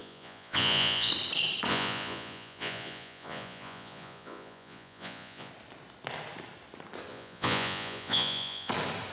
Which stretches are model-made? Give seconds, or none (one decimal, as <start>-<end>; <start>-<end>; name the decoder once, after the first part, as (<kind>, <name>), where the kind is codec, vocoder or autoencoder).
0.0-1.1 (vocoder, Vocos); 1.7-5.5; 7.1-8.7